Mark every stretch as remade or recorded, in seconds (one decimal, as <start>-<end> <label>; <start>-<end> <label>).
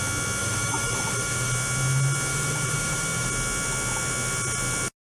0.0-0.4 recorded; 0.4-1.5 remade; 1.5-2.3 recorded; 2.3-3.3 remade; 3.3-5.1 recorded